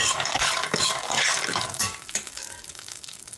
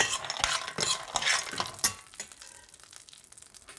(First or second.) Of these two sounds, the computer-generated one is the first